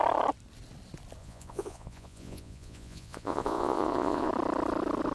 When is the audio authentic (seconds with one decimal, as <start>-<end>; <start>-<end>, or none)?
0.0-1.2; 4.3-5.1

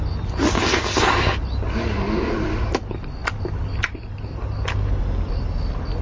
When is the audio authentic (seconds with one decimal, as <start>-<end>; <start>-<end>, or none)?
0.0-6.0

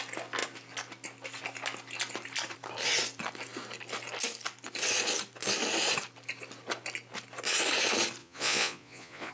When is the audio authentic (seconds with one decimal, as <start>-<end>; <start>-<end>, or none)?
0.0-8.2

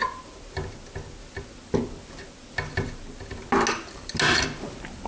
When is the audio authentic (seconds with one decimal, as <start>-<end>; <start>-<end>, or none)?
0.0-5.1

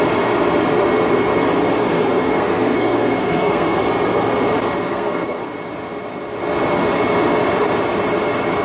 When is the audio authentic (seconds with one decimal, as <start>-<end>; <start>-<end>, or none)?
0.0-1.8; 3.8-4.9; 5.4-8.6

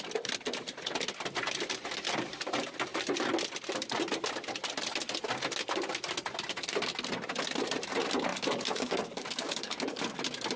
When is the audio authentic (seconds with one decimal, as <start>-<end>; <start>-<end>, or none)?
0.0-8.3; 10.0-10.6

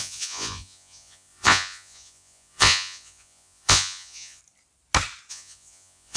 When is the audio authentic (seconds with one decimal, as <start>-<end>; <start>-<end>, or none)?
4.4-5.3

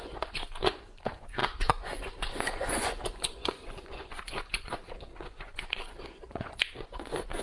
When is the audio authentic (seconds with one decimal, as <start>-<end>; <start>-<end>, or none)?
none